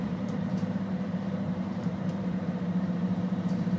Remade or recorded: remade